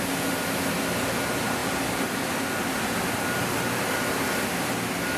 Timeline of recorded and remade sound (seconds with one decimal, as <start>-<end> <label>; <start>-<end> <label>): 0.0-5.2 recorded